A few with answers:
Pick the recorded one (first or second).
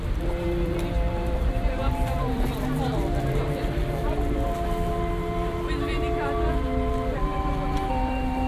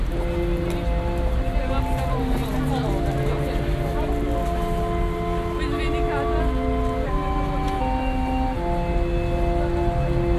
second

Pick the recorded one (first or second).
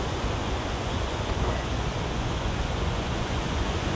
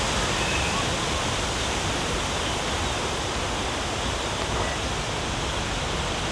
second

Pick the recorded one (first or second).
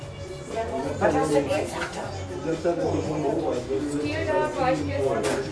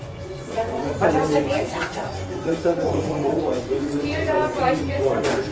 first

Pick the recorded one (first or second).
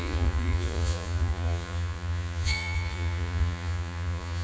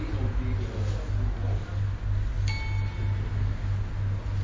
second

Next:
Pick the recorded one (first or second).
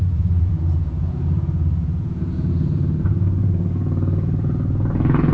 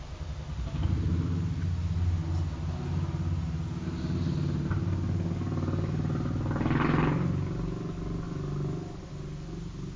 second